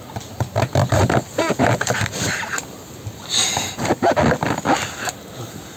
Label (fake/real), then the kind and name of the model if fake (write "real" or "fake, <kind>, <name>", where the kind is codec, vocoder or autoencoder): real